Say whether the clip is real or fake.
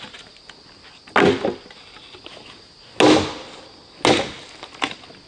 real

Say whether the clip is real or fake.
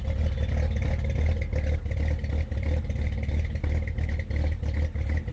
real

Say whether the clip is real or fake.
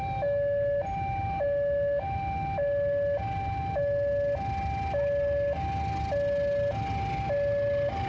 real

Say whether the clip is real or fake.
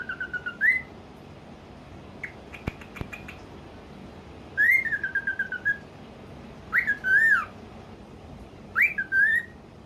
real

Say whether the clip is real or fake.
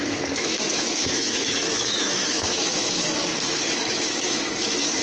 fake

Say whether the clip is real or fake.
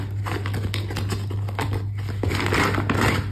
real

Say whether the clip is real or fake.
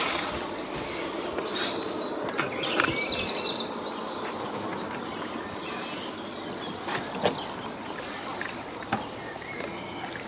real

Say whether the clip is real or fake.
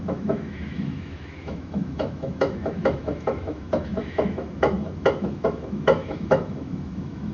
fake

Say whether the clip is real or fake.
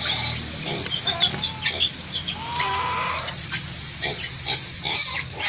real